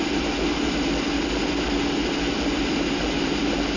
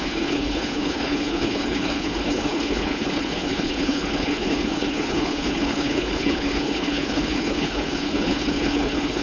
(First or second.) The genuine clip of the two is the first